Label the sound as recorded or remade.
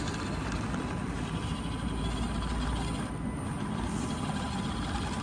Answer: recorded